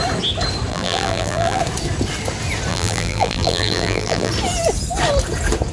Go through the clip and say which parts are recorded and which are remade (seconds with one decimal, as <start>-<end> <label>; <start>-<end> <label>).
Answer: 0.0-0.7 recorded; 0.7-1.6 remade; 1.6-2.7 recorded; 2.7-4.3 remade; 4.3-5.7 recorded